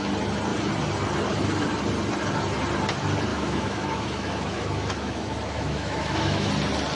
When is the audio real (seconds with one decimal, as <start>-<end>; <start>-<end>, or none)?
0.0-3.3; 6.5-6.9